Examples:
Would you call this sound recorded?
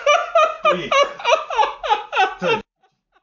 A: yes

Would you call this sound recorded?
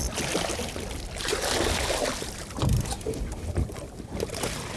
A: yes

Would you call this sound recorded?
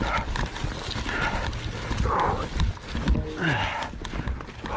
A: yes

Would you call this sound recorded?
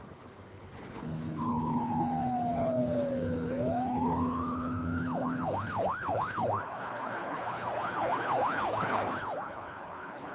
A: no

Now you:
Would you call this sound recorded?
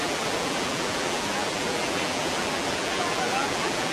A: no